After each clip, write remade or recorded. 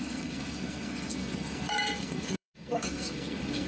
remade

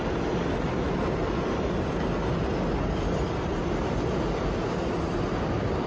recorded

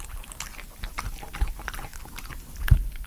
recorded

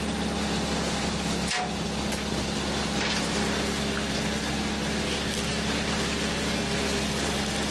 recorded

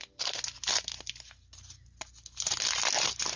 recorded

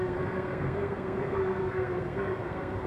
remade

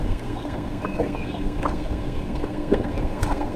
remade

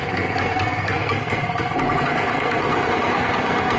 remade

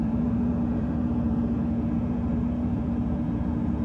remade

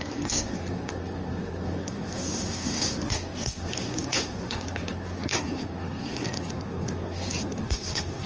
remade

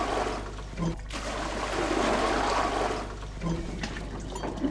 recorded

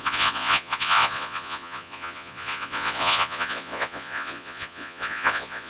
remade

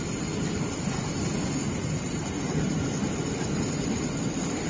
recorded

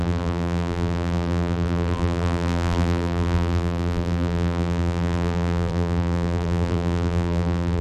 remade